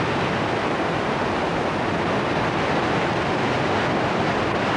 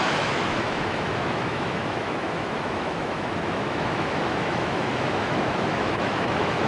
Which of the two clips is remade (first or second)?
second